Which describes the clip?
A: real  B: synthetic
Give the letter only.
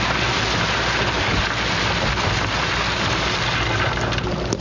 A